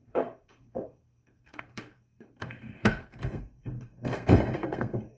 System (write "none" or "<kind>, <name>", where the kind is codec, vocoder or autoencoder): codec, SNAC